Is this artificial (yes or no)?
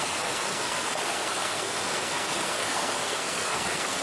yes